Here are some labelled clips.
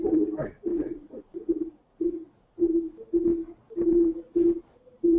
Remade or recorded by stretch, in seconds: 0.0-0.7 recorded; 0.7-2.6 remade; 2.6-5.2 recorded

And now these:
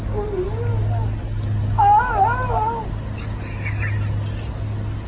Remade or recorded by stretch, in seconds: 0.0-5.1 recorded

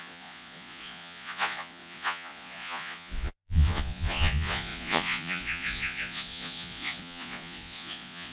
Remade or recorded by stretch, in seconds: 0.0-8.3 remade

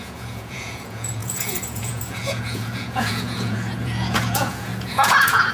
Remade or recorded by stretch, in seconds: 0.0-5.5 remade

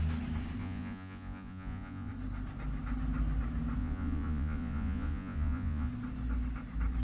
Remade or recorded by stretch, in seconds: 0.0-0.6 recorded; 0.6-2.1 remade; 2.1-3.8 recorded; 3.8-5.9 remade; 5.9-7.0 recorded